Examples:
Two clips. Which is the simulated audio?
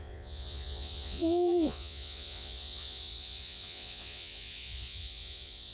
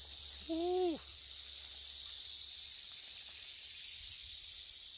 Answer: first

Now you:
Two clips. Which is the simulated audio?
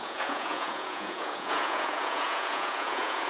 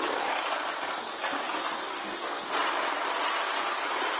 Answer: first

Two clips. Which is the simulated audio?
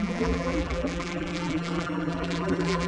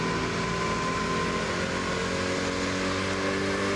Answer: first